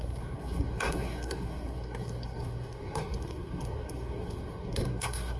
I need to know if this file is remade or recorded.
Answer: remade